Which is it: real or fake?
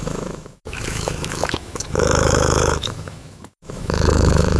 fake